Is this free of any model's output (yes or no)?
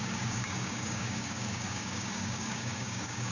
no